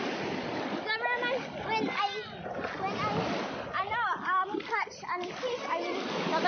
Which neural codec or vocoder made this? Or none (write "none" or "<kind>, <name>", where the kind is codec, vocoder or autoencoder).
none